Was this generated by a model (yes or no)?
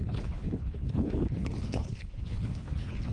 yes